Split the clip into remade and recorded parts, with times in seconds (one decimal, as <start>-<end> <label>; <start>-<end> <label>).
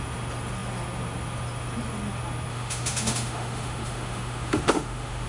0.0-2.5 recorded; 2.5-5.3 remade